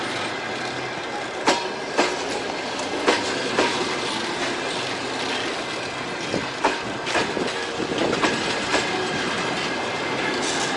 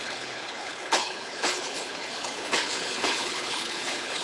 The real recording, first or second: first